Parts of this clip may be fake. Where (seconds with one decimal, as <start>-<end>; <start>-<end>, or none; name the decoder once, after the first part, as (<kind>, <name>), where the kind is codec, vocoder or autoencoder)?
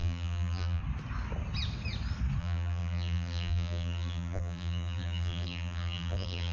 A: 0.0-0.8 (vocoder, BigVGAN v2); 2.4-6.5